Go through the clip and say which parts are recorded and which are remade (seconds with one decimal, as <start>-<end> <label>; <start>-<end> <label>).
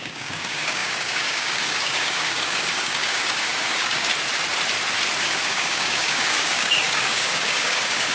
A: 0.0-4.1 remade; 4.1-5.2 recorded; 5.2-8.1 remade